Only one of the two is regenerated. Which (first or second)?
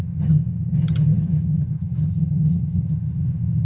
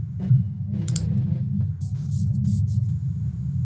first